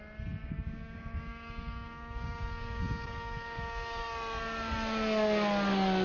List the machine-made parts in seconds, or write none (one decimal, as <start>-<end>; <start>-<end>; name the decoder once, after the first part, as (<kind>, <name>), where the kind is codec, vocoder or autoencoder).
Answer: 0.4-4.0 (codec, DAC)